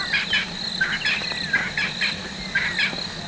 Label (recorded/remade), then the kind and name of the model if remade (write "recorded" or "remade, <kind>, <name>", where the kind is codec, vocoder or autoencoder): recorded